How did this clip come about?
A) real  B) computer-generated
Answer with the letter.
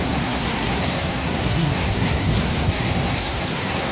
B